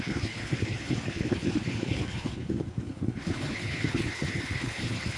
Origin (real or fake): fake